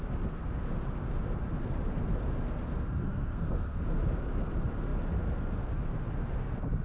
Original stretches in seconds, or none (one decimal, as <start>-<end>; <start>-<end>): 0.0-3.0; 3.8-6.8